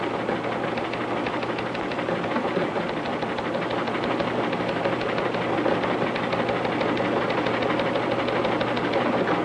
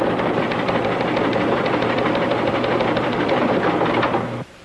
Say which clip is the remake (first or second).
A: second